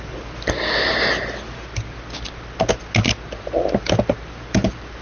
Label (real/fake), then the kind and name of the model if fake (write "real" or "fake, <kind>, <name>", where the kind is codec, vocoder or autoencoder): real